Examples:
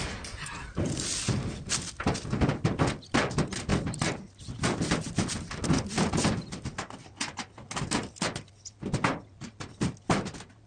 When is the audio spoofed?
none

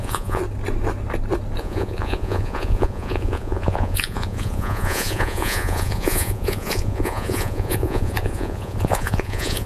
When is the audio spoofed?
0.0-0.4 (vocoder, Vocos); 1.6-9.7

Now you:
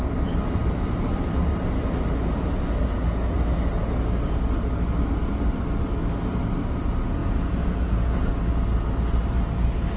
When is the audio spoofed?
7.2-8.3 (vocoder, Vocos)

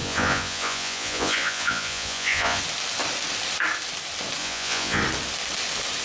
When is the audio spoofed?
0.0-2.6 (vocoder, Vocos); 4.4-5.0

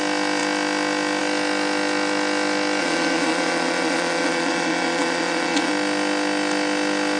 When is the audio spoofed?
2.8-5.7 (vocoder, Vocos)